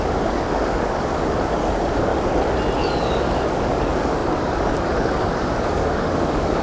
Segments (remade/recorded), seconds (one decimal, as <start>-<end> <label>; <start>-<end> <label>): 0.0-2.1 remade; 2.1-2.8 recorded; 2.8-6.6 remade